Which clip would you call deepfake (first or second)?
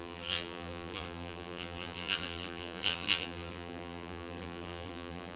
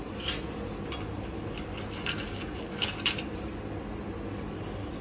first